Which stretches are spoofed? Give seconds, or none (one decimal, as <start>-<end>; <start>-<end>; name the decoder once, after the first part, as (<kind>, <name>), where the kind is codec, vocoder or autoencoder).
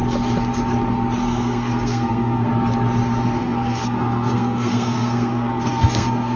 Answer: 1.2-2.5 (codec, SNAC); 3.4-6.4